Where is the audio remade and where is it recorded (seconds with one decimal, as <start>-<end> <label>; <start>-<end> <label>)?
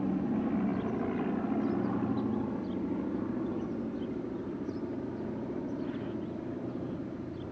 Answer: 0.0-7.5 recorded